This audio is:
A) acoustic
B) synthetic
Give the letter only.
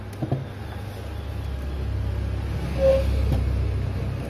A